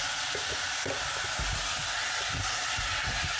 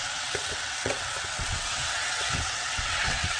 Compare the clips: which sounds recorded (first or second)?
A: first